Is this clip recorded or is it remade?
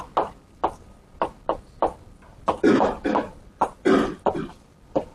recorded